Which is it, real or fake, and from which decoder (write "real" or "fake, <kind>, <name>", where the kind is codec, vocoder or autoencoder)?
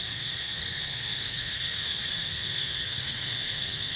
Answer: fake, codec, SNAC